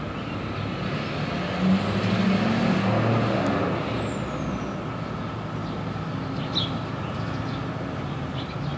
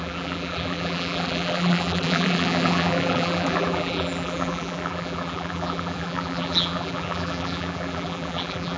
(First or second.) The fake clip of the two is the second